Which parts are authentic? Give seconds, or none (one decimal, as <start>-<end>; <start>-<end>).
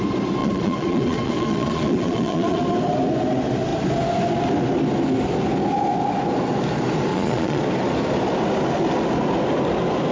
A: 0.0-0.4; 2.6-7.1; 7.6-10.1